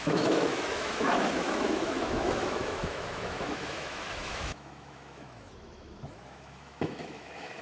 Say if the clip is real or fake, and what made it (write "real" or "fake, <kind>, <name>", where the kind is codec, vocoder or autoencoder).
fake, autoencoder, DAC-VAE